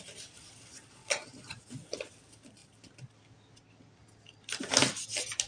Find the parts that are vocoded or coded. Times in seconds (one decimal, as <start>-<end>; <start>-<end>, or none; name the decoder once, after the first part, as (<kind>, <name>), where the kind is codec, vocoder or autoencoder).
2.6-4.6 (vocoder, BigVGAN v2)